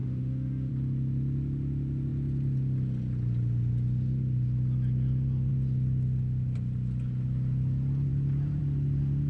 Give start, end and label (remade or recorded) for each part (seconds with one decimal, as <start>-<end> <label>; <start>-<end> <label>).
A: 0.0-0.7 remade; 0.7-9.3 recorded